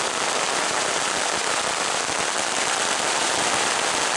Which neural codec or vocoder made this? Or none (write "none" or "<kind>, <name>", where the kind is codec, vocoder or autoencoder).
vocoder, BigVGAN v2